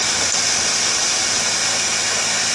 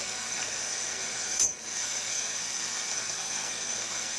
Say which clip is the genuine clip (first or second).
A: first